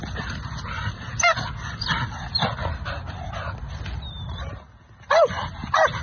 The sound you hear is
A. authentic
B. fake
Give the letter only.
A